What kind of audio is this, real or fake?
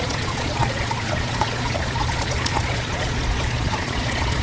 fake